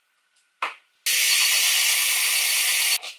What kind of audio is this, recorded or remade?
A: recorded